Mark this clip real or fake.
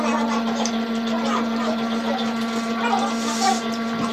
real